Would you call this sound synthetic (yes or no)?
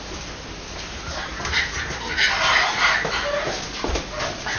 no